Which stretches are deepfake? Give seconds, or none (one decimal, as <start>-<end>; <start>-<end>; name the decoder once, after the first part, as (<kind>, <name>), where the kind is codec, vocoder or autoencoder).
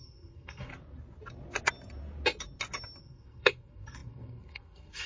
0.0-0.7 (codec, SNAC); 3.0-5.1